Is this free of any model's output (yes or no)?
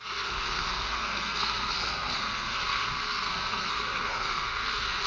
no